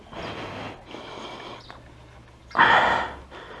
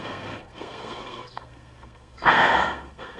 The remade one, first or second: second